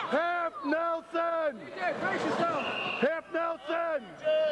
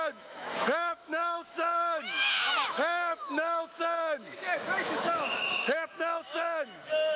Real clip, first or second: first